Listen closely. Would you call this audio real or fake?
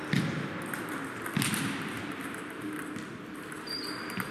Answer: real